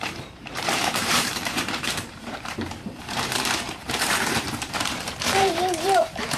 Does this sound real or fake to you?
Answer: fake